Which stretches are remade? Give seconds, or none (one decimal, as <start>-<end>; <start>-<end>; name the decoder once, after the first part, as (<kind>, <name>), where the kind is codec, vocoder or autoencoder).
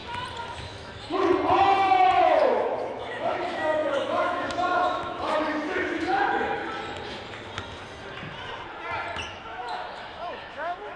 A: 0.5-1.3 (autoencoder, DAC-VAE); 2.2-6.6; 9.3-11.0